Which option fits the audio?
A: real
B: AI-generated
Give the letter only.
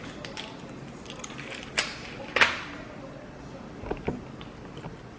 A